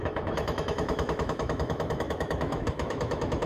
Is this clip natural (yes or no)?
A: no